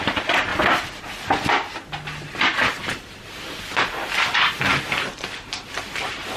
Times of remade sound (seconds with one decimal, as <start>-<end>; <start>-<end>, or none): none